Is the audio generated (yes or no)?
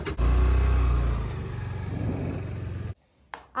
no